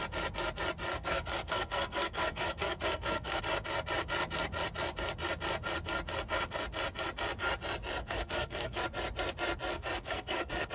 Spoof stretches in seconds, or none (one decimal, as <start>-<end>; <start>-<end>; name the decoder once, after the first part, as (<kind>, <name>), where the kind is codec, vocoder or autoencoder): 0.9-3.4 (codec, SNAC); 8.0-8.8; 9.7-10.7